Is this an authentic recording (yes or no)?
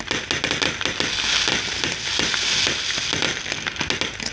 yes